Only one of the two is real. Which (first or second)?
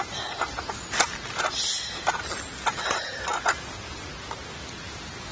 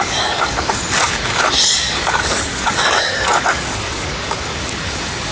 first